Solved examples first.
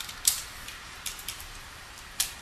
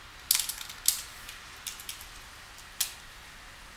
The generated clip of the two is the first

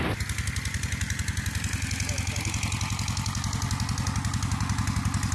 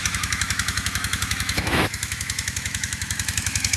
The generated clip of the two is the second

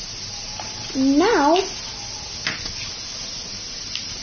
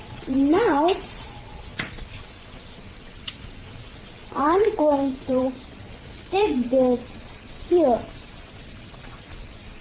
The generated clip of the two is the second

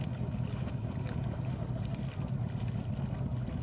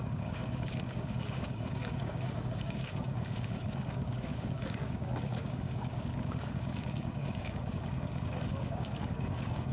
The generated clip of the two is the second